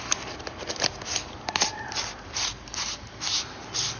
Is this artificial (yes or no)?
no